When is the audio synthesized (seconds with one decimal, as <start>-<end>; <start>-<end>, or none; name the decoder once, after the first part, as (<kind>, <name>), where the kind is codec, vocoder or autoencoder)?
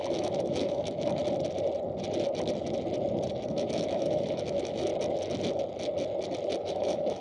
0.0-1.2 (autoencoder, DAC-VAE); 3.5-4.9; 6.6-7.2